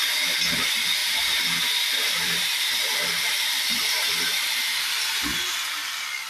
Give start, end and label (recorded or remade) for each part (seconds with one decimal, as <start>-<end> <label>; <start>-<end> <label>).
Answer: 0.0-1.0 recorded; 1.0-4.8 remade; 4.8-6.3 recorded